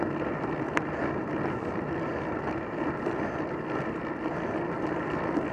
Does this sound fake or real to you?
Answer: real